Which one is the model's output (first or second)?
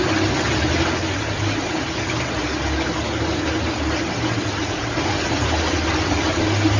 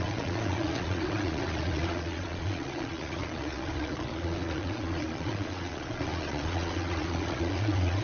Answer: second